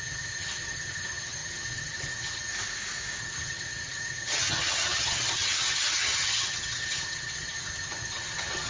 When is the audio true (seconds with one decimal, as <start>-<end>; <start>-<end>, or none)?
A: 2.5-3.2